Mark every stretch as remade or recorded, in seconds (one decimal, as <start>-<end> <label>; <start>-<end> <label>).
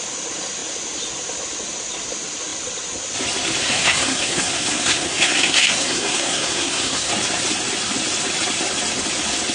0.0-3.6 recorded; 3.6-7.1 remade; 7.1-9.5 recorded